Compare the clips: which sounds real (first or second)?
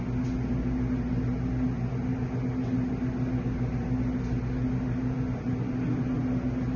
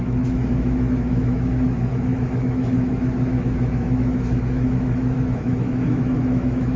first